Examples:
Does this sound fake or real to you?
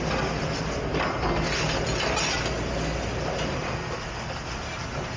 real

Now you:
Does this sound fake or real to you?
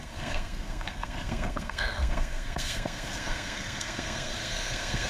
fake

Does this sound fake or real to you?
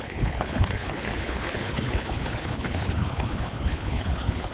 fake